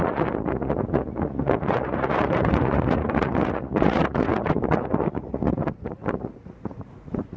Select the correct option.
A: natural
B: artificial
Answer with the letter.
B